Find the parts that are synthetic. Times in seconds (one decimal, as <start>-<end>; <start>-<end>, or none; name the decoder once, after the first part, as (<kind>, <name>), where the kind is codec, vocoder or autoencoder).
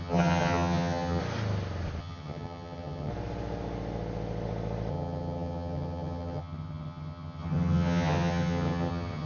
0.0-1.2 (vocoder, HiFi-GAN); 2.0-3.1; 4.9-9.3